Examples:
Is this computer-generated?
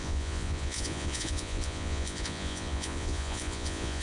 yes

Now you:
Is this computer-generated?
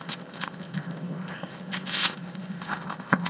yes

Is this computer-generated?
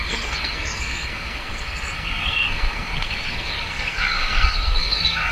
yes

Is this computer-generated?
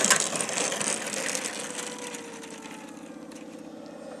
no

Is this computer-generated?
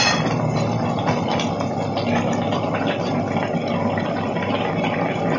no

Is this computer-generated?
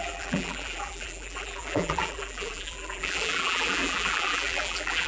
yes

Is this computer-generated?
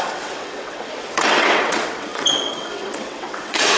yes